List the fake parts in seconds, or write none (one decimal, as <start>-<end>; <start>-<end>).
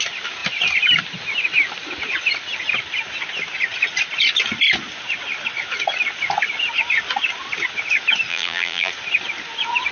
8.3-8.9